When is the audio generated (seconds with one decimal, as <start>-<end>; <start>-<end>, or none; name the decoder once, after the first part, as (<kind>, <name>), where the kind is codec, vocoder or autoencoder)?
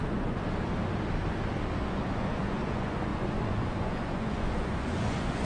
0.0-0.4 (vocoder, Vocos); 1.8-5.4